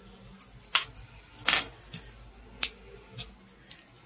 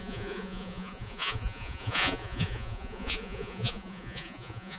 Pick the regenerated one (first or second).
second